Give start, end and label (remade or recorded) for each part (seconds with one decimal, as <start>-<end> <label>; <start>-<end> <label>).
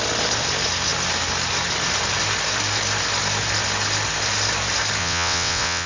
0.0-5.0 recorded; 5.0-5.9 remade